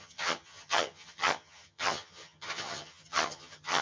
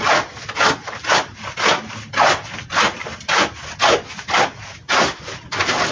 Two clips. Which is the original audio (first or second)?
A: second